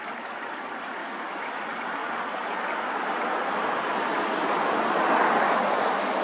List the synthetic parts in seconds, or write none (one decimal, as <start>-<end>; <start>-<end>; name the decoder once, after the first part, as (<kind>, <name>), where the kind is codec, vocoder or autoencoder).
1.0-1.6 (autoencoder, DAC-VAE)